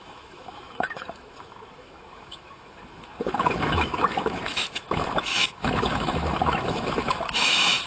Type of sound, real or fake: fake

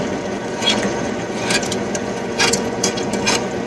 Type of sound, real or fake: fake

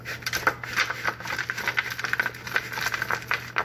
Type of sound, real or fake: real